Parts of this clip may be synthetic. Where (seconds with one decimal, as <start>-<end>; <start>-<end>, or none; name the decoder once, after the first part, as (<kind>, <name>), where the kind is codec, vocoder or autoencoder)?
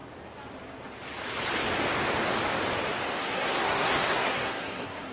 3.2-5.1 (codec, SNAC)